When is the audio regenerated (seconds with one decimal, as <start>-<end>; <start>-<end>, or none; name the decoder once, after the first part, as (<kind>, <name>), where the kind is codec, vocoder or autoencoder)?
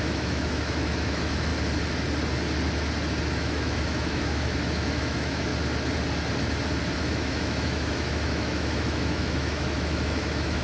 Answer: 0.0-1.5 (autoencoder, DAC-VAE); 3.2-5.5; 7.0-10.6